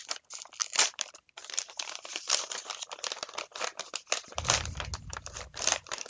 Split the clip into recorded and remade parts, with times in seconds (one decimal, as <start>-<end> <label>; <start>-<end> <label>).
0.0-0.6 recorded; 0.6-2.6 remade; 2.6-5.1 recorded; 5.1-6.1 remade